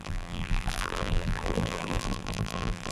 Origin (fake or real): fake